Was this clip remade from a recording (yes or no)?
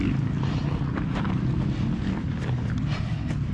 no